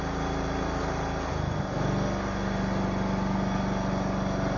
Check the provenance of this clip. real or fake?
real